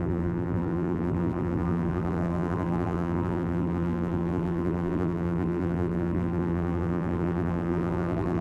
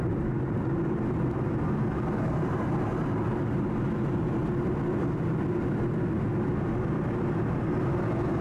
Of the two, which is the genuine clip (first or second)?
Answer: second